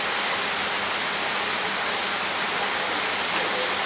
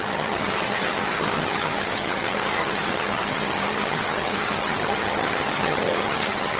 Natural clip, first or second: first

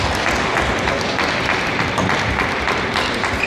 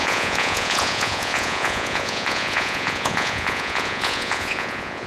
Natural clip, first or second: first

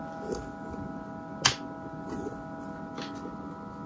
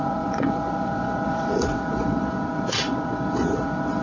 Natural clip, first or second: first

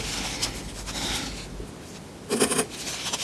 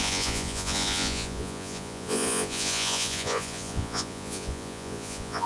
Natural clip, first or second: first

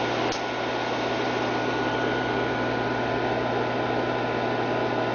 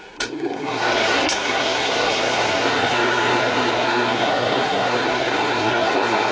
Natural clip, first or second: first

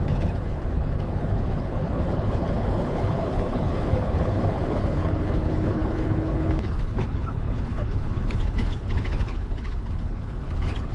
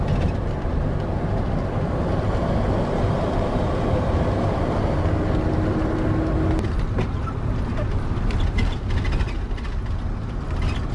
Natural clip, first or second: second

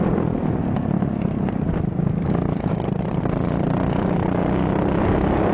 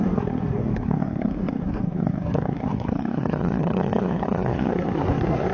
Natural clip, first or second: first